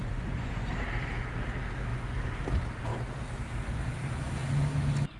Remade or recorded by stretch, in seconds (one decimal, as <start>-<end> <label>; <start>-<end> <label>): 0.0-0.7 remade; 0.7-1.9 recorded; 1.9-2.4 remade; 2.4-5.2 recorded